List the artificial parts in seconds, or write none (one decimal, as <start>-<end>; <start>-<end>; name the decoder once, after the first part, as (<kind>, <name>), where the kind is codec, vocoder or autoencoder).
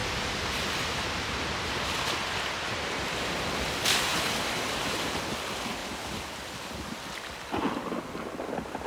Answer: 4.1-5.2 (vocoder, BigVGAN v2); 5.8-6.7